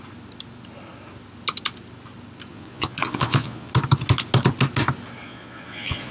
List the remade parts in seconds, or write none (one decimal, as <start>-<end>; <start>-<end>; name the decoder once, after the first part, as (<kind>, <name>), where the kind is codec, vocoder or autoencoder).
2.5-3.7 (vocoder, Vocos); 5.3-6.1